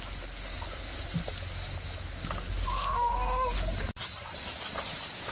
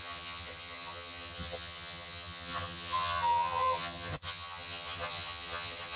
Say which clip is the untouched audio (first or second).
first